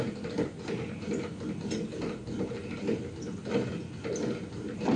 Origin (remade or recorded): recorded